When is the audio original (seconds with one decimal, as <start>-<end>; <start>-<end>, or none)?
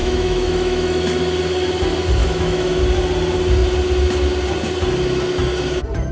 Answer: 1.0-2.2; 2.8-6.1